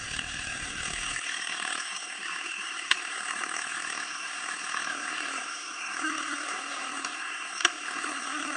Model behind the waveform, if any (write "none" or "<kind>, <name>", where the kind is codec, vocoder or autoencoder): codec, SNAC